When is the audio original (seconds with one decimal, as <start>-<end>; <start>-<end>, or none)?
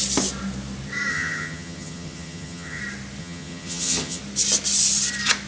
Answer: 0.0-1.1; 2.8-3.2; 4.2-5.5